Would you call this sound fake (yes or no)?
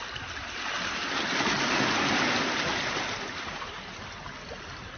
no